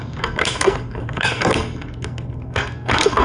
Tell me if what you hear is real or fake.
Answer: fake